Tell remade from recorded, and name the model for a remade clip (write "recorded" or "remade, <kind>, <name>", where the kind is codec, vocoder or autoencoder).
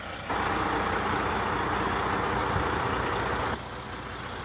recorded